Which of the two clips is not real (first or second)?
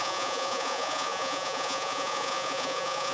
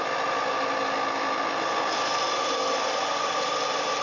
first